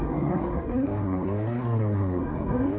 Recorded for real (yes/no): no